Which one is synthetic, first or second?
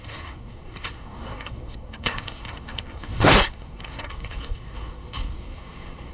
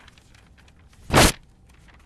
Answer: first